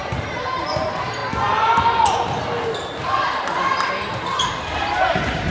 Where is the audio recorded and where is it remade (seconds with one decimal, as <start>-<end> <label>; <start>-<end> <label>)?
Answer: 0.0-1.2 remade; 1.2-4.2 recorded; 4.2-5.5 remade